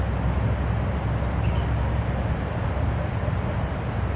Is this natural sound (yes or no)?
yes